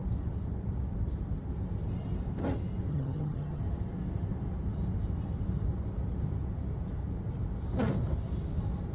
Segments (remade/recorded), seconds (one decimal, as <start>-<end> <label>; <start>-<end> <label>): 0.0-2.9 recorded; 2.9-3.6 remade; 3.6-8.9 recorded